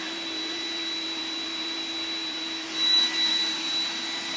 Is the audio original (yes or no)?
no